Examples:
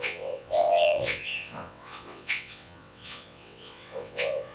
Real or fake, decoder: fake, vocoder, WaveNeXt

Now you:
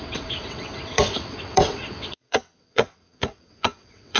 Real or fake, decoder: fake, vocoder, WaveNeXt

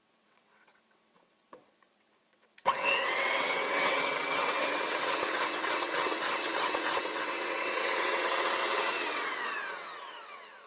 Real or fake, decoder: fake, vocoder, WaveNeXt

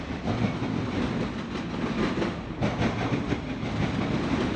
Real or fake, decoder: real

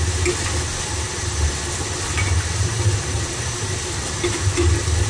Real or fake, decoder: real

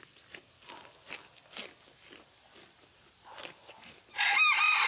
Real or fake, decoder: real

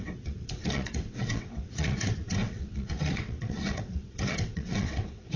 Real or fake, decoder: fake, vocoder, WaveNeXt